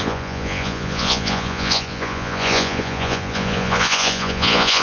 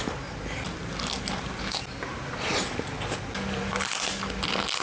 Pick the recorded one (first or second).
second